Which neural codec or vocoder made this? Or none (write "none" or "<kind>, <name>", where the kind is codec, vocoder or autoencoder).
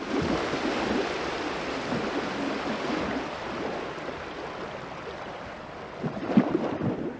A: none